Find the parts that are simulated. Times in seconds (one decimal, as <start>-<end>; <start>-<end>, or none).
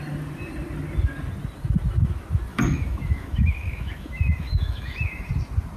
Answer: 2.5-5.3